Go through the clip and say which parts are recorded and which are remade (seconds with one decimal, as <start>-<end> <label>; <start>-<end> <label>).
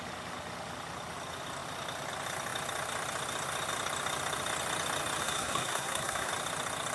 0.0-5.2 recorded; 5.2-6.3 remade; 6.3-6.9 recorded